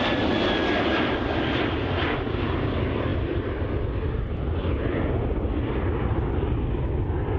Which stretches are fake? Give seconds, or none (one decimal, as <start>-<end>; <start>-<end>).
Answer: none